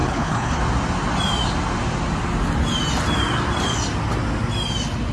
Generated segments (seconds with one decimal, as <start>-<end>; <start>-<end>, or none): 0.0-0.6